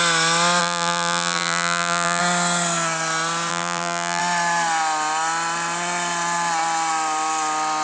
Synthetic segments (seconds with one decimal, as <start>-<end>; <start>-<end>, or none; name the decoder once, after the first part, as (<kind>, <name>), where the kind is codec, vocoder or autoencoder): 0.6-2.2 (vocoder, BigVGAN v2); 3.5-4.2